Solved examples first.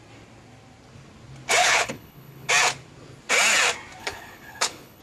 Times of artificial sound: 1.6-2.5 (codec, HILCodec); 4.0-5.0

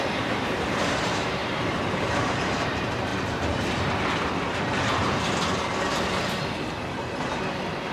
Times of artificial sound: 0.0-3.1 (vocoder, BigVGAN v2)

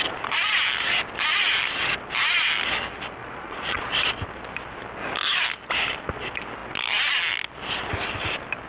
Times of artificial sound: 3.2-3.9 (vocoder, Vocos)

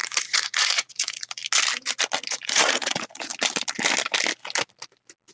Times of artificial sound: 0.0-1.4 (vocoder, Vocos); 2.3-3.3

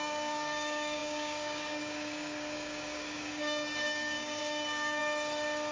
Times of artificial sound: 0.0-5.0 (codec, DAC)

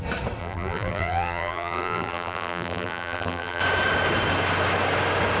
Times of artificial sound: 0.4-3.6 (vocoder, BigVGAN v2)

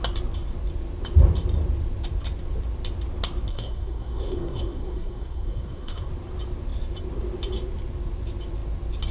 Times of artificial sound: 3.5-6.1 (codec, SNAC)